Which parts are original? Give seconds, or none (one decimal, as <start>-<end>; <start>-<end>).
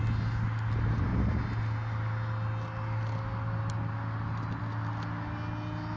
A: 0.0-6.0